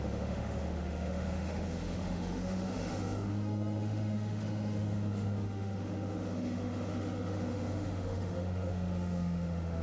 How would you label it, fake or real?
fake